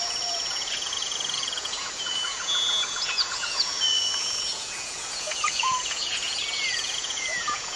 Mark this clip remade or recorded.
remade